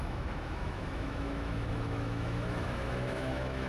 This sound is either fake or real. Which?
fake